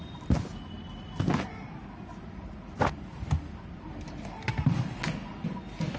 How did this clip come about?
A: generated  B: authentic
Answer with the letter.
B